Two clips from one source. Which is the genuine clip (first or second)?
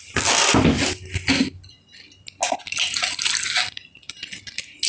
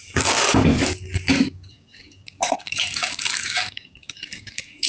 first